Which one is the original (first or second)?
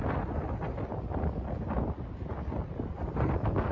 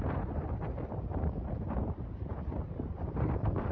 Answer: first